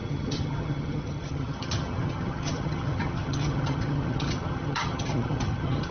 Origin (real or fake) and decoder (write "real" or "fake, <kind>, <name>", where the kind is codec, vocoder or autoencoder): fake, vocoder, HiFi-GAN